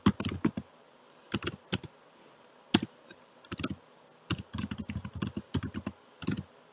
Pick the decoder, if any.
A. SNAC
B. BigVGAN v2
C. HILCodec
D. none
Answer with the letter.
D